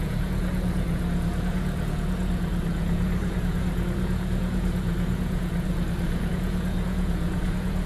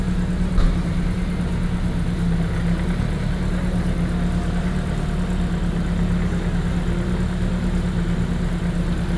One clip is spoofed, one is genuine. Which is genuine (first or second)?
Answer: second